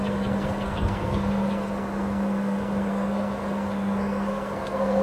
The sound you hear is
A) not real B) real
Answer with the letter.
A